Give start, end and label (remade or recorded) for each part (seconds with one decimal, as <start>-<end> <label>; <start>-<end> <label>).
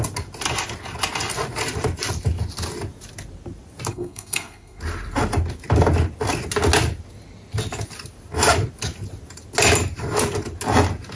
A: 0.0-3.9 recorded; 3.9-4.8 remade; 4.8-11.2 recorded